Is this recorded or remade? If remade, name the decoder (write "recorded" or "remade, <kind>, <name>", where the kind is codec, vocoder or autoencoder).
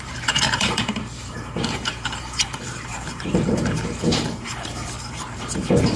remade, vocoder, BigVGAN v2